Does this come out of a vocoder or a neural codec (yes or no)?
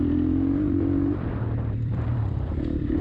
yes